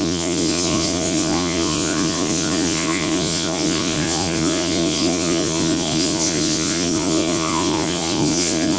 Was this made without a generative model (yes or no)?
no